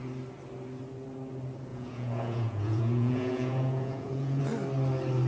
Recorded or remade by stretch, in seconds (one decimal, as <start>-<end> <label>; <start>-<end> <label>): 0.0-1.7 recorded; 1.7-4.4 remade; 4.4-5.3 recorded